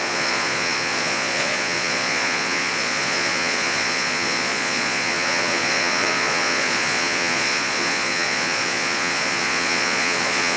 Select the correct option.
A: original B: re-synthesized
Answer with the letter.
B